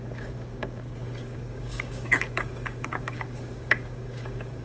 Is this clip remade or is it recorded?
remade